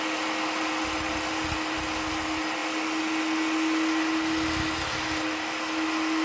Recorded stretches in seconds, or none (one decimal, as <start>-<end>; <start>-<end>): 0.0-6.2

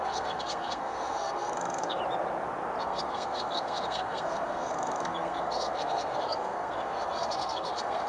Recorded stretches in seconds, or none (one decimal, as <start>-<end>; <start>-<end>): 2.0-2.8

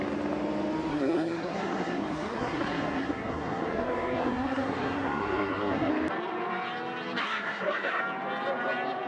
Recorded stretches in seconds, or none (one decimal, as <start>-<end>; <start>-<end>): 0.0-0.9; 5.9-7.2; 8.0-9.1

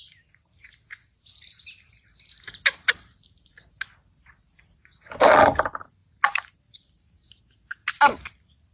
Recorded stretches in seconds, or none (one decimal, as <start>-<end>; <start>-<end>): 0.0-8.7

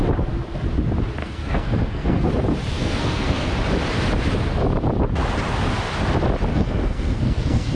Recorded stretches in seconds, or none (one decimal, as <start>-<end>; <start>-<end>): 0.0-1.2; 2.3-2.8; 3.5-6.5

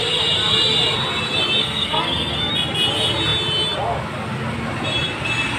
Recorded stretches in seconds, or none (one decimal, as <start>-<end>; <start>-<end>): 0.0-1.6; 2.5-5.6